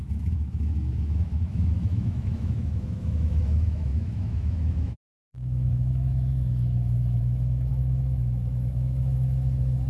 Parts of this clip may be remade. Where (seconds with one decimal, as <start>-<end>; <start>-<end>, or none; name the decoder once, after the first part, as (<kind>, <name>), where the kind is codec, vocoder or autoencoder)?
0.0-9.9 (autoencoder, DAC-VAE)